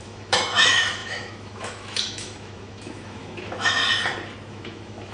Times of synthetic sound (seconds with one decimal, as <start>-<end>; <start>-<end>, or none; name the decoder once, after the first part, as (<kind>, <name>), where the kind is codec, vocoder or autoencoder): 0.0-3.8 (autoencoder, DAC-VAE); 4.5-5.1